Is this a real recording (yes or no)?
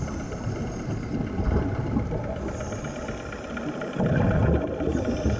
yes